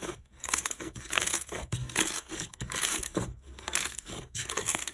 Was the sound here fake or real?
fake